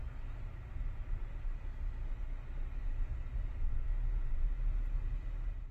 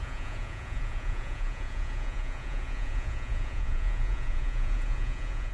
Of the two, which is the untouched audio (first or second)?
first